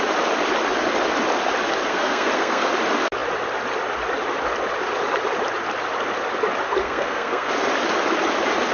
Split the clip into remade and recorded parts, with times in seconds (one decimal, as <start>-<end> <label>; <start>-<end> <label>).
0.0-1.9 recorded; 1.9-2.7 remade; 2.7-6.8 recorded; 6.8-7.5 remade; 7.5-8.7 recorded